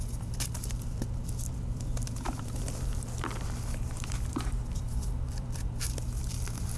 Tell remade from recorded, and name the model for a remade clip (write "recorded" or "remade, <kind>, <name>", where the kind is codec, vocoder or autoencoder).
remade, vocoder, BigVGAN v2